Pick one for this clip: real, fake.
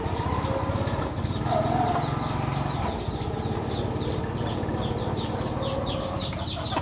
real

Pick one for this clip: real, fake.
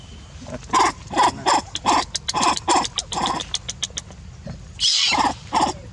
real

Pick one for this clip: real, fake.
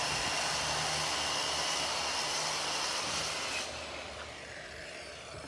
real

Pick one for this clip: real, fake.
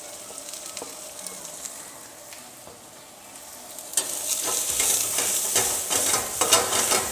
real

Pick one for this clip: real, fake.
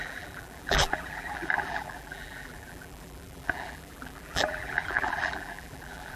fake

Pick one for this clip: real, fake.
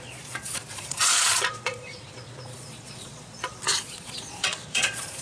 fake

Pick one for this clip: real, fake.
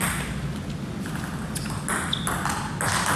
real